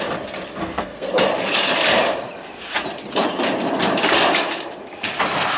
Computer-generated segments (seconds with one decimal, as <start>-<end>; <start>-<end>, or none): 0.6-1.1